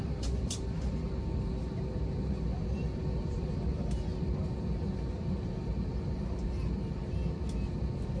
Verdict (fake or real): real